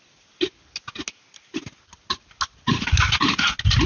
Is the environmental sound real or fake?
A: real